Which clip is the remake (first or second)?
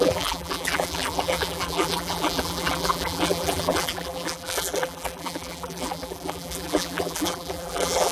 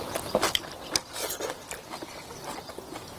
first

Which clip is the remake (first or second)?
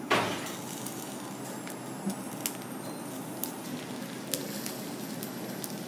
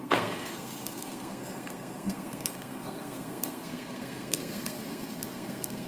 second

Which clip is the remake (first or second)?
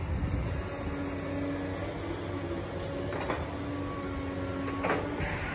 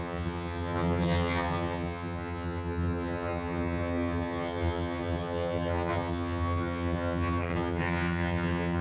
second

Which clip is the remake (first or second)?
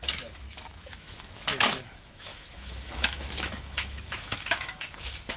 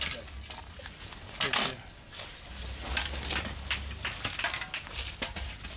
first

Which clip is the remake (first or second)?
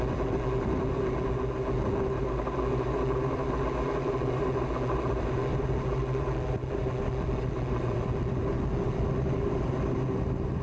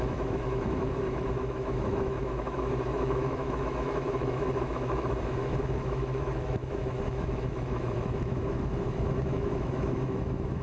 second